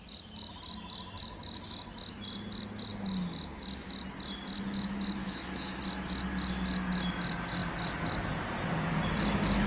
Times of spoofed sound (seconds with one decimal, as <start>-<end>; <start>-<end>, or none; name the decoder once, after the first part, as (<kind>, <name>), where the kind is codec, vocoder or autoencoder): 5.2-5.8 (autoencoder, DAC-VAE)